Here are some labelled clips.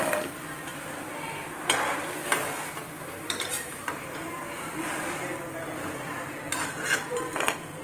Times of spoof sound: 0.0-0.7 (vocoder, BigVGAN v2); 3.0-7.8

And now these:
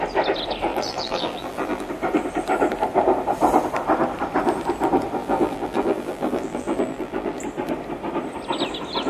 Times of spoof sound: 0.7-1.9 (vocoder, BigVGAN v2); 5.2-7.4

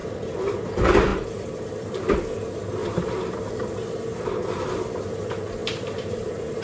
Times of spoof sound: 0.0-0.6 (vocoder, BigVGAN v2); 5.6-6.6